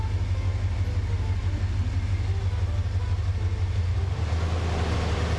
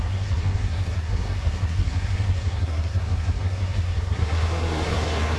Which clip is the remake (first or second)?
second